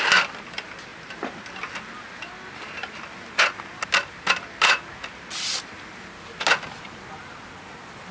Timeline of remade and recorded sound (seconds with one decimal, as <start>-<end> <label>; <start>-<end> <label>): 0.0-8.1 recorded